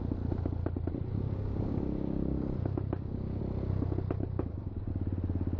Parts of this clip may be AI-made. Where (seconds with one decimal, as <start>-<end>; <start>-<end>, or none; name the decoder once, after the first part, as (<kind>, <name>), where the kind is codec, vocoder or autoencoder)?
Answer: 1.1-3.4 (codec, DAC); 4.2-4.9